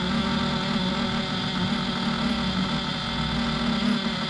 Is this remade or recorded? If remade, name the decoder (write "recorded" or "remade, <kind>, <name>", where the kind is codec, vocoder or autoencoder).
recorded